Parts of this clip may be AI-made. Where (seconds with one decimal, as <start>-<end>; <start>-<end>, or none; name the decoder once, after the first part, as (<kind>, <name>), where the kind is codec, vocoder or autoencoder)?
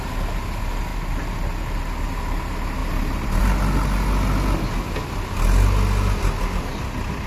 0.9-1.9 (vocoder, BigVGAN v2); 2.8-3.4